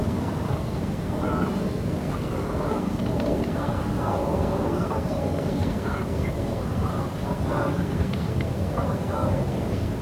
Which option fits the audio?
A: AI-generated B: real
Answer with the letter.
A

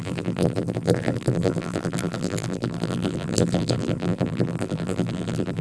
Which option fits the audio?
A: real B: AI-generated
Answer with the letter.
B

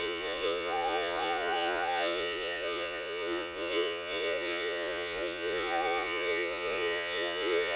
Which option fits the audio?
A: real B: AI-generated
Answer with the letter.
B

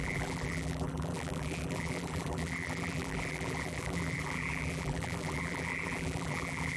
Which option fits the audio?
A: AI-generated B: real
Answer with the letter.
A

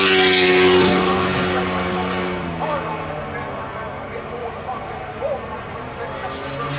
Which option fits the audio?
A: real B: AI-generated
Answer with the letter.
A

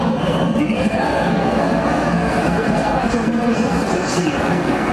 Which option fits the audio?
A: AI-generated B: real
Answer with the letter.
A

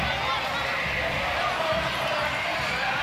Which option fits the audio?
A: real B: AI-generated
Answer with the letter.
A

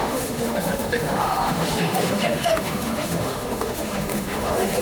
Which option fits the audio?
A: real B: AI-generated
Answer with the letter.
B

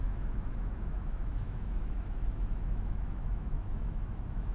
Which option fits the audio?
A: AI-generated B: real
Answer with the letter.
A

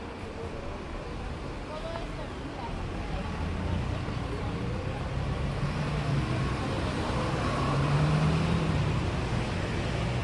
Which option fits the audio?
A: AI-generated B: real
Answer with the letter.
B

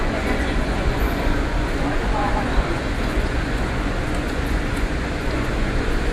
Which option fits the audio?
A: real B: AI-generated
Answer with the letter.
B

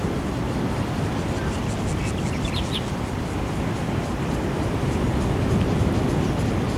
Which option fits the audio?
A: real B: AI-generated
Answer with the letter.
A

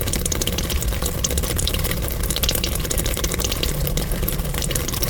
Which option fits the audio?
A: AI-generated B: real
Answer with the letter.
A